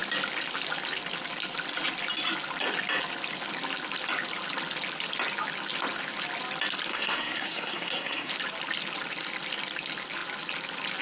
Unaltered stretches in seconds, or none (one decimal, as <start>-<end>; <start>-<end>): 0.0-6.9; 8.3-11.0